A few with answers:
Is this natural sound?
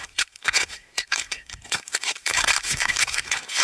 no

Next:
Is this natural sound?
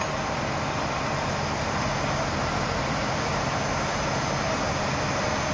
yes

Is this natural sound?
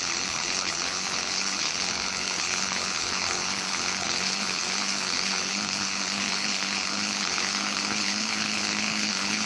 no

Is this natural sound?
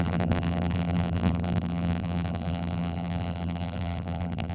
no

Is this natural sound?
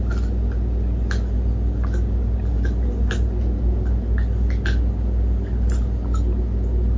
yes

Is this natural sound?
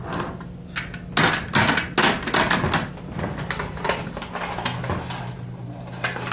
yes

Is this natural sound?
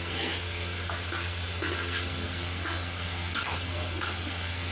no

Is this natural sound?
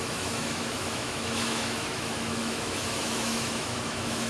no